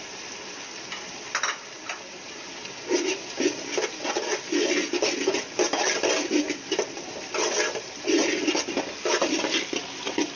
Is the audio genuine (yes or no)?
yes